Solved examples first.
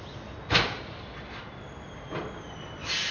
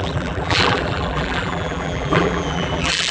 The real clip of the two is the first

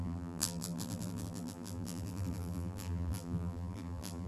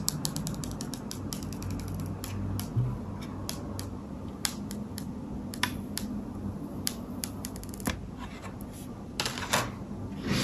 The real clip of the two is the second